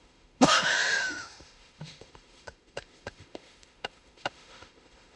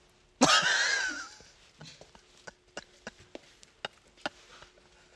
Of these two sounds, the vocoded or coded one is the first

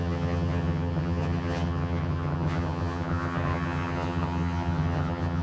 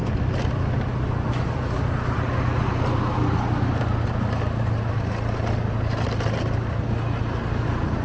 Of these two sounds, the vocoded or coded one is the first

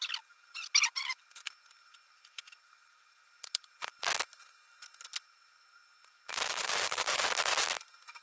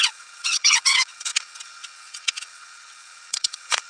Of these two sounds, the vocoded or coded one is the second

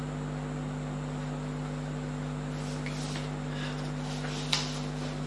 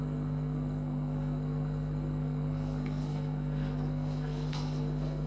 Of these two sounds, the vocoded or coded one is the second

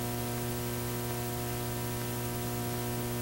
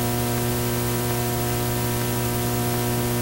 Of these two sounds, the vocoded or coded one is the second